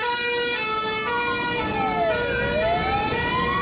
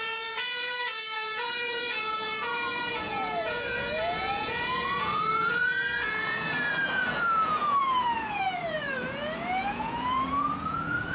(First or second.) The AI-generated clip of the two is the second